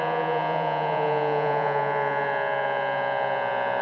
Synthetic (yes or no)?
yes